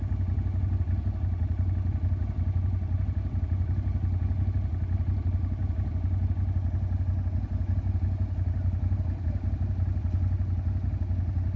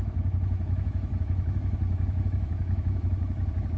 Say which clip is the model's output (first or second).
second